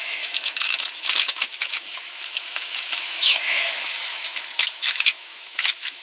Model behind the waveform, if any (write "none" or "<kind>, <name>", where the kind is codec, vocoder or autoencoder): autoencoder, DAC-VAE